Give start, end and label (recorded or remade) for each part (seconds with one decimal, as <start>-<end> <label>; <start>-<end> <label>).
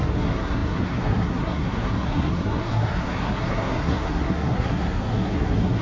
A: 0.0-5.8 remade